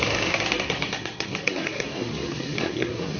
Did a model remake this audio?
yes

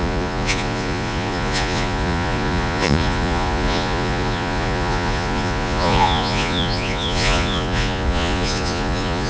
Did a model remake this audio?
yes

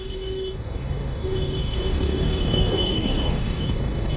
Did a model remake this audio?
yes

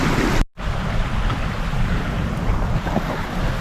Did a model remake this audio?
no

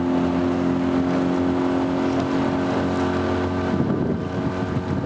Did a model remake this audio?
no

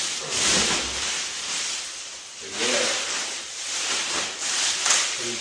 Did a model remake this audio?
no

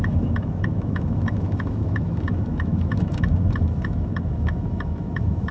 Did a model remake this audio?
yes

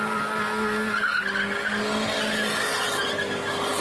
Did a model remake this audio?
no